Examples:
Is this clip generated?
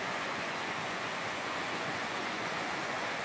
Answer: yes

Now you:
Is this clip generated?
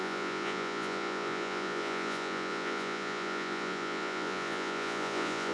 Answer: yes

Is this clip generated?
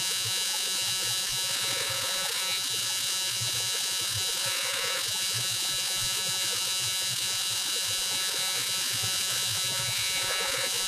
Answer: yes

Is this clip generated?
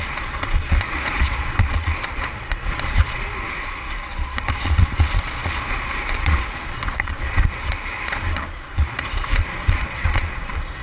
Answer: yes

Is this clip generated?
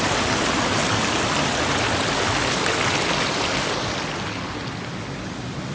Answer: no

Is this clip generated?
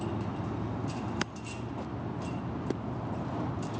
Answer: no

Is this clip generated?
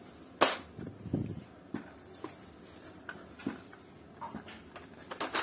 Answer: no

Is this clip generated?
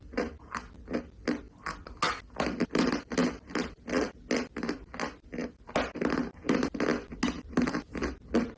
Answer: no